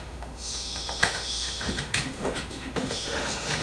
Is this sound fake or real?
fake